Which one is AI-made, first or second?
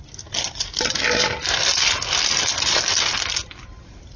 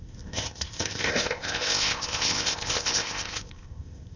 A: second